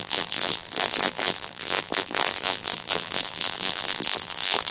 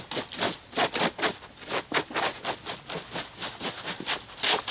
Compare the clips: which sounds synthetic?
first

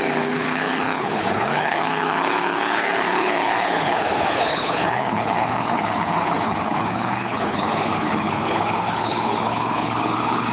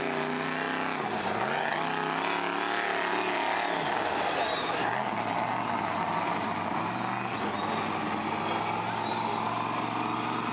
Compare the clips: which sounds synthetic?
first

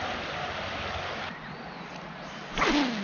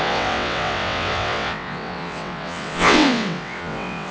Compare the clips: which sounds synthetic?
second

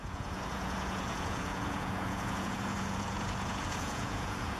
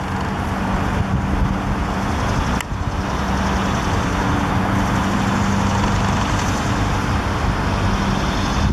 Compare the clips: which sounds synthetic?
first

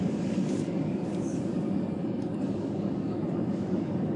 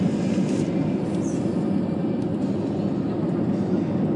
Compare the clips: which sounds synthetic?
first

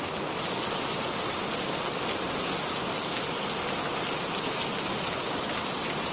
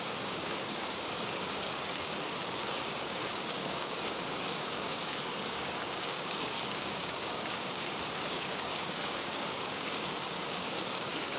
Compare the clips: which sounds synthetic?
second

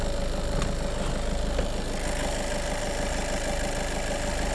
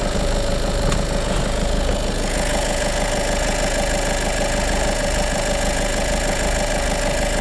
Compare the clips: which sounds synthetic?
second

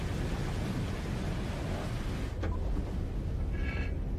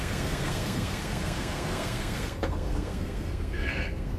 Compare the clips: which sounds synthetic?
second